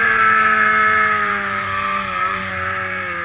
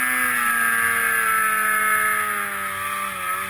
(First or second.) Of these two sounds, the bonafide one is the second